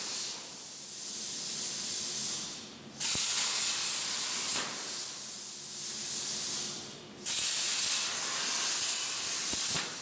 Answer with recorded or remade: recorded